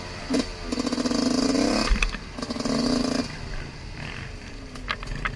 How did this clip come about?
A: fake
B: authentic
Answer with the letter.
B